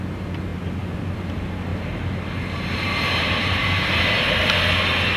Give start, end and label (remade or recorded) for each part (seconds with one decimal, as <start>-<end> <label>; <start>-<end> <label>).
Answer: 0.0-1.7 recorded; 1.7-4.0 remade; 4.0-5.2 recorded

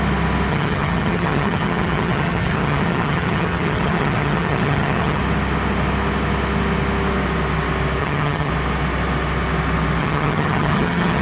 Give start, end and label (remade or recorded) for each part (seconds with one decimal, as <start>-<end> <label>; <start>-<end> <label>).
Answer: 0.0-0.5 recorded; 0.5-5.2 remade; 5.2-8.0 recorded; 8.0-8.5 remade; 8.5-10.0 recorded; 10.0-11.2 remade